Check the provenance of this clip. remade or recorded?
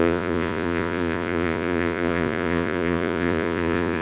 remade